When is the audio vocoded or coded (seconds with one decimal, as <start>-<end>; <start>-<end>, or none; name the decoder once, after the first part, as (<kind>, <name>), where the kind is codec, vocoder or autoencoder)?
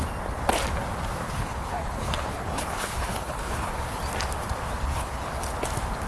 1.2-3.7 (codec, HILCodec); 4.8-5.3